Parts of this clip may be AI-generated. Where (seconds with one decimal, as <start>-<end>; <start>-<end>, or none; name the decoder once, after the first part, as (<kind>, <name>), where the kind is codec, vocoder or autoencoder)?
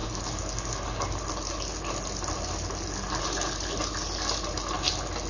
none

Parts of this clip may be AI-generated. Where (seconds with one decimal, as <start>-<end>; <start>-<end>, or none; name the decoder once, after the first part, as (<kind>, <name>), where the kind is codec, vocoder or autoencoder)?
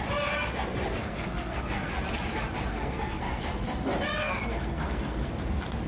1.0-1.9 (codec, SNAC); 2.7-3.4; 4.2-5.3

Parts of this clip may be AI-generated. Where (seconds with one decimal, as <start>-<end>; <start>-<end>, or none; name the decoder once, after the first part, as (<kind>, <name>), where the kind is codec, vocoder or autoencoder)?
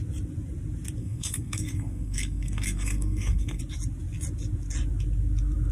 1.0-3.6 (codec, SNAC)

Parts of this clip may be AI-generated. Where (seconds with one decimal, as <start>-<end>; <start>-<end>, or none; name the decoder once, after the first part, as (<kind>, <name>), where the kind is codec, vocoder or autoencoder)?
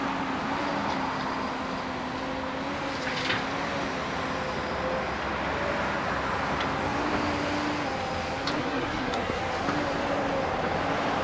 8.6-9.4 (codec, SNAC)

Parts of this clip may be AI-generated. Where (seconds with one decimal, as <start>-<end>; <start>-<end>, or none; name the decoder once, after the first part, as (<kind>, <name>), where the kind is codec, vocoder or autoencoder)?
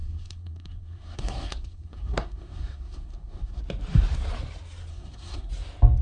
0.0-3.6 (codec, SNAC); 4.9-5.5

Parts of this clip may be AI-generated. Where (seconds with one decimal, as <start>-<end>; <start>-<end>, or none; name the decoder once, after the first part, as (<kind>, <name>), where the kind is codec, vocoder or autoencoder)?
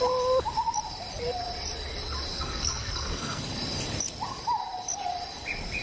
2.3-3.4 (codec, SNAC)